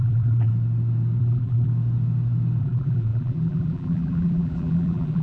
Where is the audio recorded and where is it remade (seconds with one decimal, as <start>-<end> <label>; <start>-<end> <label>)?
0.0-0.5 remade; 0.5-1.2 recorded; 1.2-1.7 remade; 1.7-2.6 recorded; 2.6-5.2 remade